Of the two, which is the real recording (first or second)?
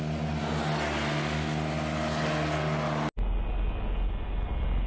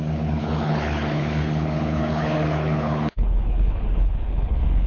first